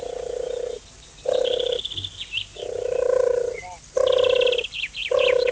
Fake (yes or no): no